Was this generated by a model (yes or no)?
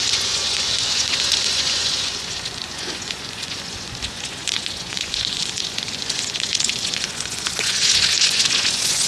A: yes